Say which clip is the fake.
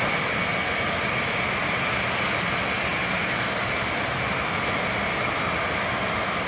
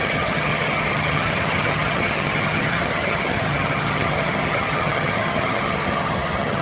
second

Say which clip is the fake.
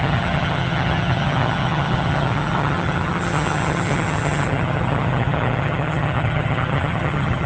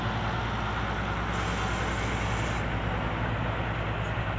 first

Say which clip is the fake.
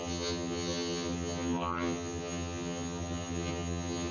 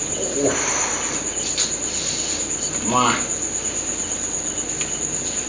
first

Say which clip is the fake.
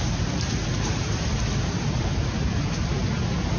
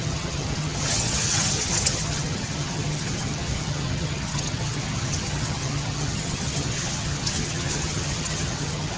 second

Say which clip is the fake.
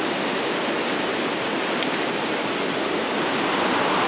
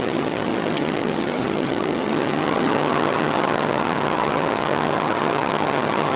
second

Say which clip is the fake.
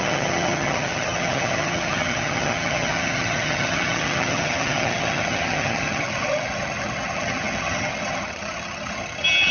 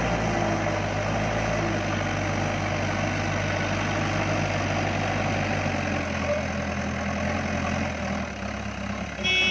first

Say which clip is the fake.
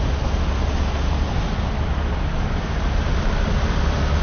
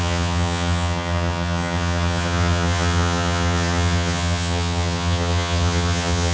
second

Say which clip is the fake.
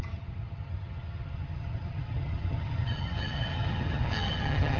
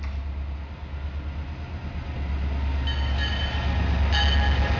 first